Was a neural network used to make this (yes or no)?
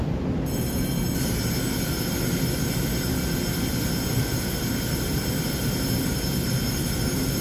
no